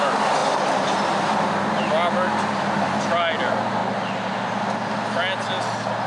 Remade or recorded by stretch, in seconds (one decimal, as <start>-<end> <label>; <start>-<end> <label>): 0.0-6.1 recorded